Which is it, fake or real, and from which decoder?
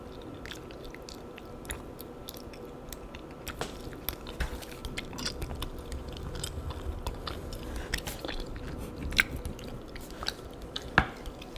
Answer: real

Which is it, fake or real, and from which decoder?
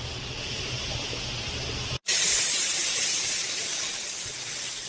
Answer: real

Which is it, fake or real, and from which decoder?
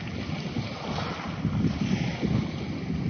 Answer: real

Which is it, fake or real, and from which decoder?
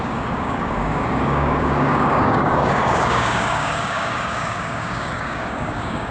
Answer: fake, codec, DAC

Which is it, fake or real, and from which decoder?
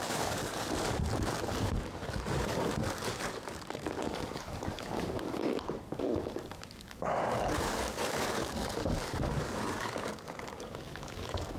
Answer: fake, codec, DAC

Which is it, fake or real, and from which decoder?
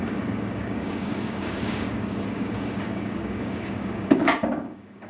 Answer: fake, codec, DAC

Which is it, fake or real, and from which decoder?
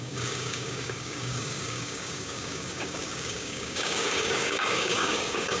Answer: fake, codec, DAC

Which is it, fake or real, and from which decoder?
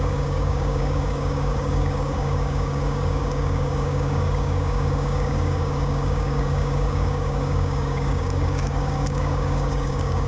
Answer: fake, codec, DAC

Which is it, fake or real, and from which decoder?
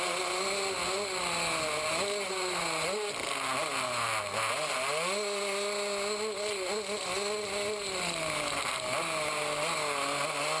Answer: real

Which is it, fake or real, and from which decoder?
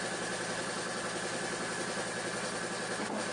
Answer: real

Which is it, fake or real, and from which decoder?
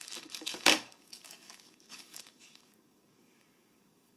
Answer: fake, codec, DAC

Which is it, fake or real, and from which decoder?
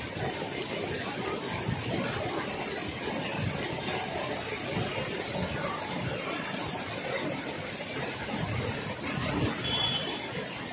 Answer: real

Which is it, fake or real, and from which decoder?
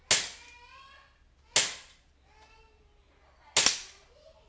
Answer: real